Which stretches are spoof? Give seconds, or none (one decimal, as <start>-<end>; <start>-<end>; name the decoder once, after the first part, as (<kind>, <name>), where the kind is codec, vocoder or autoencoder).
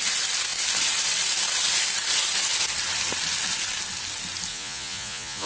4.5-5.5 (vocoder, Vocos)